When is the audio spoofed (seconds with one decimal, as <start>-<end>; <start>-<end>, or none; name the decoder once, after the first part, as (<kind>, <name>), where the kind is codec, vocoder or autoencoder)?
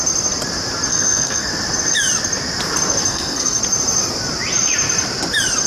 0.9-1.5 (codec, SNAC); 3.1-3.6